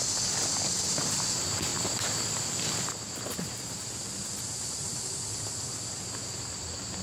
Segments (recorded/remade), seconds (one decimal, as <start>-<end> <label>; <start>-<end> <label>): 0.0-7.0 recorded